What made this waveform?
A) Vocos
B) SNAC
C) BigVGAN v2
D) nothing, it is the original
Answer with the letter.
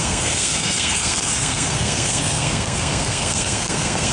B